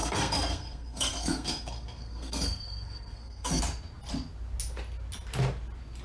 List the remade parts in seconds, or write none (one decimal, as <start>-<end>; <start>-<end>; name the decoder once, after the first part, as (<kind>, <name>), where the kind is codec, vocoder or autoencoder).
0.0-3.6 (codec, SNAC)